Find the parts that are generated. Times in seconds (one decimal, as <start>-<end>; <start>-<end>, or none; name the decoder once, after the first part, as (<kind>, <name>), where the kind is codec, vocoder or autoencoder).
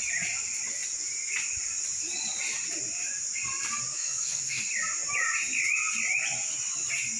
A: 3.9-4.6 (autoencoder, DAC-VAE)